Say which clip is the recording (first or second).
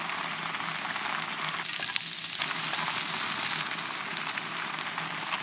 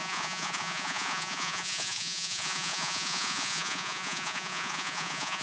first